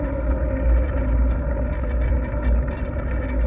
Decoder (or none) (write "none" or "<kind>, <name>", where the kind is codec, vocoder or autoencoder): none